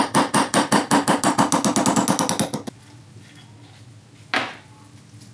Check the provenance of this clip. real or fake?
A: real